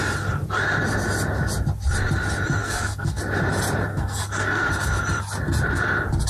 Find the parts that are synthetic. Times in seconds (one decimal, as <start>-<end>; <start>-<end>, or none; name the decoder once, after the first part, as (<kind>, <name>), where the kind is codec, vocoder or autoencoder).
2.6-3.2 (codec, SNAC); 3.9-4.7